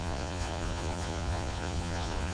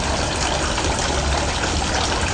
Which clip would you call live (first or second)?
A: second